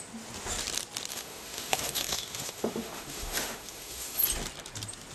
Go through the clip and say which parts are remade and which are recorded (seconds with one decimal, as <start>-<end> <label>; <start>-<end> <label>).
0.0-1.1 recorded; 1.1-4.2 remade; 4.2-5.1 recorded